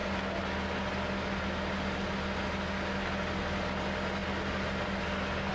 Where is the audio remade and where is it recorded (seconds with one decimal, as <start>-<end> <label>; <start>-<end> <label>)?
0.0-5.5 recorded